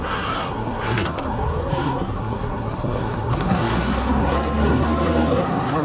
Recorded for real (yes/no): no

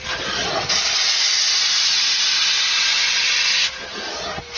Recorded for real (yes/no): yes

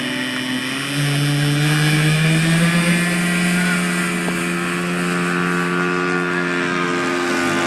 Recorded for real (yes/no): yes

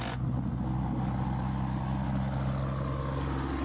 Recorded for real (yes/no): yes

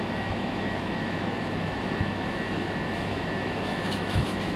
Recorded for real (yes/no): no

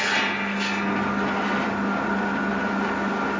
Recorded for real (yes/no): yes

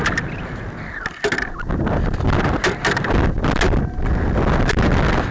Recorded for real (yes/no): yes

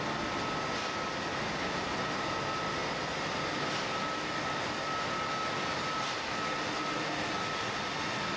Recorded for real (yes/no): yes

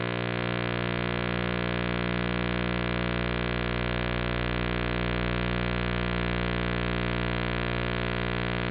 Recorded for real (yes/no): yes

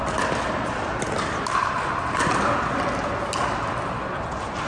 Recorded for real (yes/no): yes